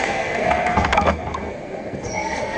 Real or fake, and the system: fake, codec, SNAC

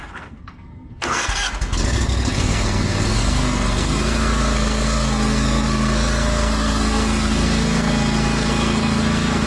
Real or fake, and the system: fake, codec, SNAC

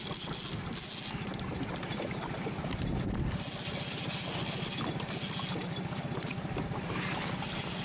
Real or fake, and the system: real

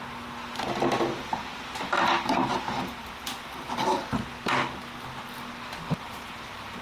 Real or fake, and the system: real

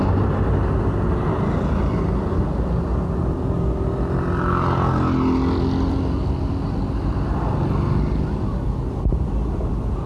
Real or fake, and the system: real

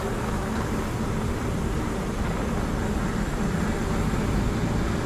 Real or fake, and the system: real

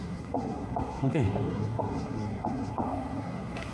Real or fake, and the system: fake, codec, SNAC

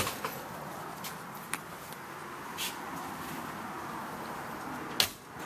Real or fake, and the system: real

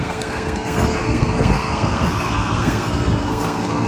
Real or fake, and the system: fake, codec, SNAC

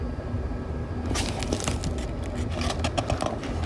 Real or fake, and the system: real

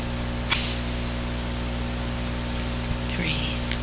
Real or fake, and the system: real